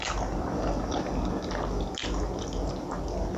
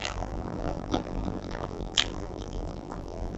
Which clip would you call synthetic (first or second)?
second